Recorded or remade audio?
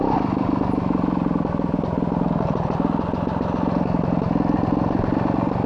recorded